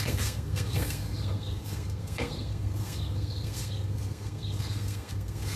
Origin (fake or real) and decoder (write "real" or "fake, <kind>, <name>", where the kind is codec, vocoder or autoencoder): fake, codec, SNAC